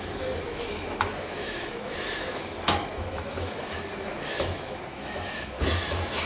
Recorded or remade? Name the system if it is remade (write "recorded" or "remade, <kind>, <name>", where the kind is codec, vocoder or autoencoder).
remade, autoencoder, DAC-VAE